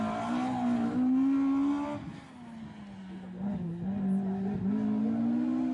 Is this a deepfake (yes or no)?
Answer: no